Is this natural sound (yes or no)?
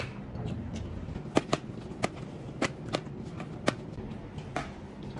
yes